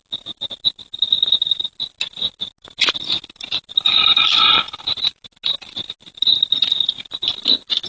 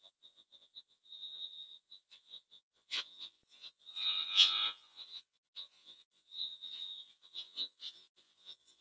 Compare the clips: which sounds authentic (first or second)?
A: first